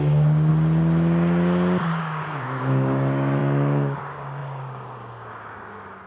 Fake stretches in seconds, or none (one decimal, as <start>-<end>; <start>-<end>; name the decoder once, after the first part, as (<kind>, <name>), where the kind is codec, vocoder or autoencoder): 0.0-0.5 (codec, DAC); 2.0-6.1